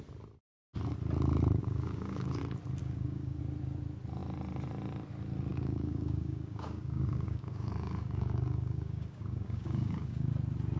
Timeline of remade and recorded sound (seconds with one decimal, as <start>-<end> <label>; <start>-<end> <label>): 0.0-1.6 recorded; 1.6-2.4 remade; 2.4-2.8 recorded; 2.8-3.4 remade; 3.4-5.5 recorded; 5.5-10.3 remade; 10.3-10.8 recorded